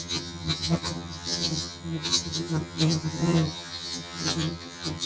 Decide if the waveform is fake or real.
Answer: fake